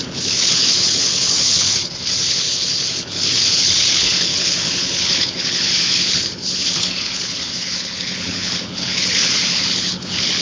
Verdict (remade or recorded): remade